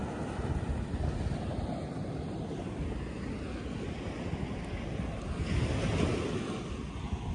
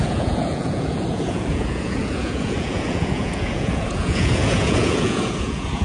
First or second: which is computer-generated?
second